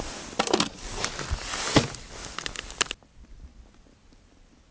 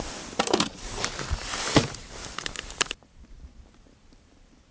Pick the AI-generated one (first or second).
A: second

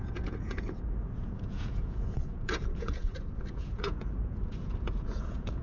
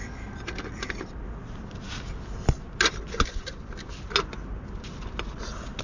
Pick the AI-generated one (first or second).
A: first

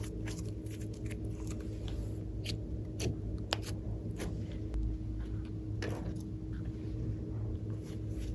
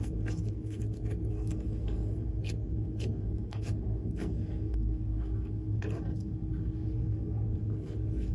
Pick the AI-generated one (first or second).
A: second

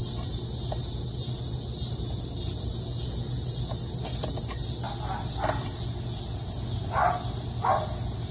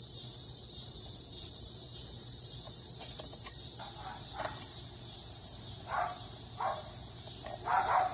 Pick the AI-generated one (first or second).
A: second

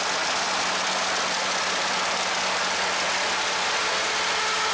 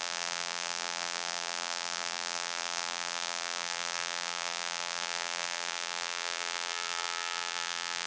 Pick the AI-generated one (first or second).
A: second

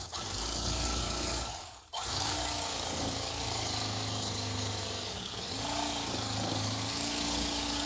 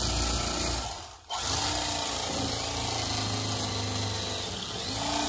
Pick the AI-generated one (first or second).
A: first